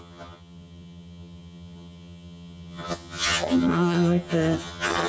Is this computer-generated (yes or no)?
yes